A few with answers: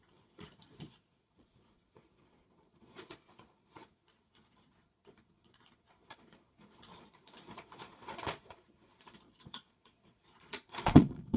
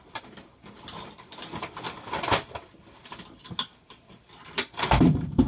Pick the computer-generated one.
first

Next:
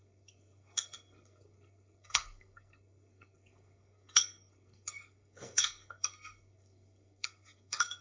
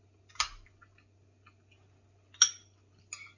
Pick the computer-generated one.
first